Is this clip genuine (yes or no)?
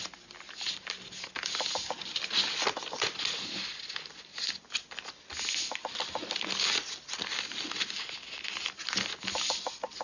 yes